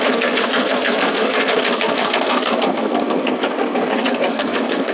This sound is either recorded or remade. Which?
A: remade